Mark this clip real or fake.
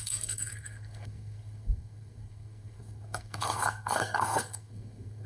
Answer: fake